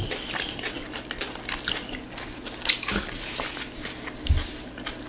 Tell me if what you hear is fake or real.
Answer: real